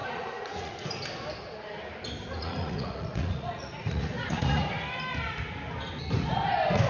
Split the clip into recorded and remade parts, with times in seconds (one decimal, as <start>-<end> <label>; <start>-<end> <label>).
0.0-0.9 remade; 0.9-2.4 recorded; 2.4-4.6 remade; 4.6-6.9 recorded